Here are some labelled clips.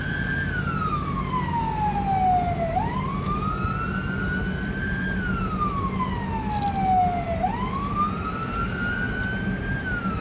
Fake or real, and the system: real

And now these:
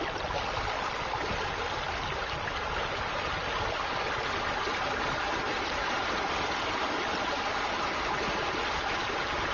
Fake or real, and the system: real